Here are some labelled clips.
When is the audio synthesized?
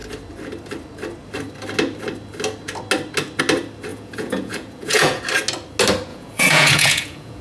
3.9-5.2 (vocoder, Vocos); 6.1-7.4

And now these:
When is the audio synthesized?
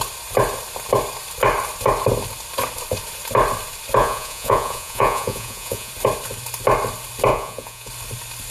4.0-5.9 (vocoder, Vocos); 7.3-7.9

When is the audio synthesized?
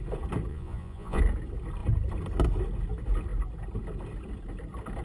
0.5-1.2 (vocoder, Vocos)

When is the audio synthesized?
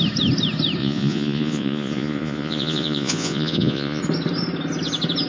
0.8-4.0 (vocoder, Vocos)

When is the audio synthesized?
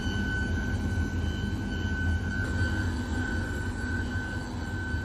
3.1-4.1 (vocoder, Vocos)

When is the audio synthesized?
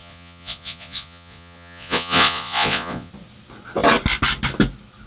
0.0-3.1 (vocoder, Vocos)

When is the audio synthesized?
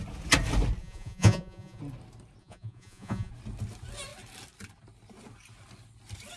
0.8-1.8 (vocoder, Vocos); 2.4-3.3